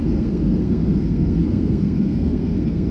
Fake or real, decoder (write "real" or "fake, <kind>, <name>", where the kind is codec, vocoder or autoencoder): fake, codec, SNAC